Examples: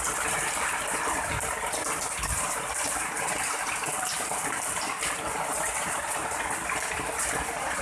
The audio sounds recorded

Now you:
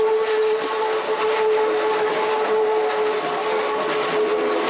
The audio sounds recorded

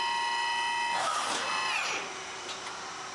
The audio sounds recorded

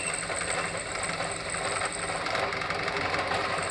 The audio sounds recorded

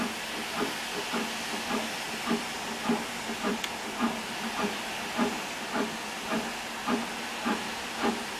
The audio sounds recorded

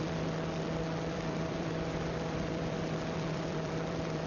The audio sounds remade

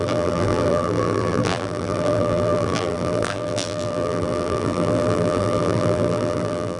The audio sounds remade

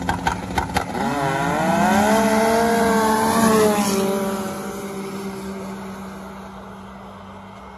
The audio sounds recorded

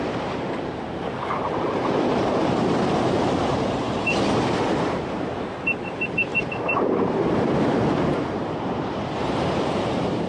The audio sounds remade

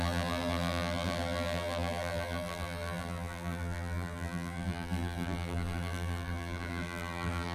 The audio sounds remade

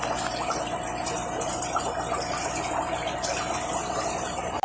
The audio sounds remade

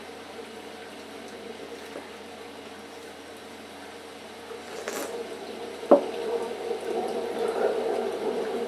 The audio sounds recorded